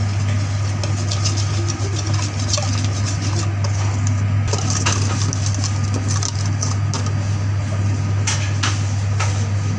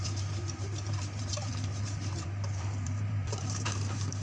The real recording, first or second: first